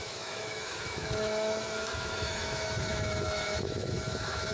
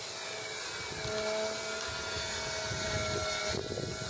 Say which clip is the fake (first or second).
first